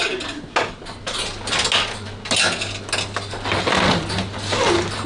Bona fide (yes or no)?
yes